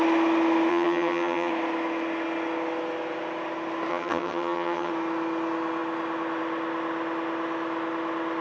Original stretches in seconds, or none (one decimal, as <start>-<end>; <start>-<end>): 0.0-0.7; 1.5-3.9; 4.9-8.4